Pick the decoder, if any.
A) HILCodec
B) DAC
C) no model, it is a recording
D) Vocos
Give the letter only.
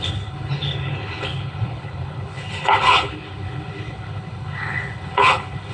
A